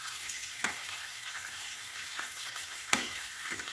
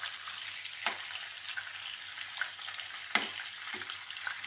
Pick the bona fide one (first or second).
second